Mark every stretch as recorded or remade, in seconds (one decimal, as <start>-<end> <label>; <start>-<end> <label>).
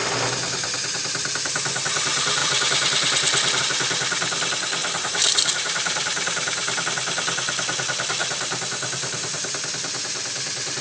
0.0-4.8 recorded; 4.8-6.8 remade; 6.8-8.2 recorded; 8.2-9.6 remade; 9.6-10.8 recorded